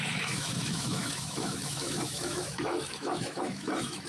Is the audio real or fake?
fake